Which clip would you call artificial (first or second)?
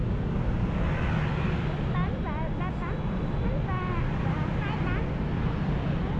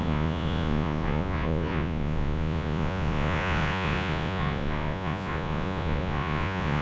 second